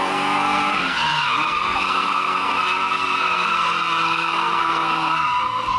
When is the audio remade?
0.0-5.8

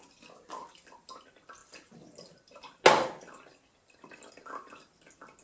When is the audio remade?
none